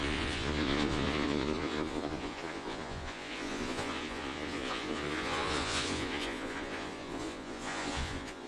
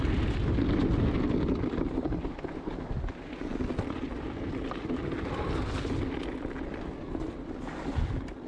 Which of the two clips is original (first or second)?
second